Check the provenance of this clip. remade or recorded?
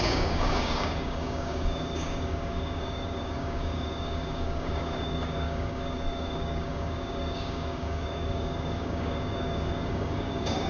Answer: remade